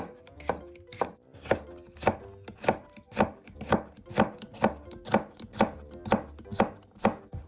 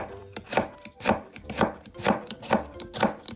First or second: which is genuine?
first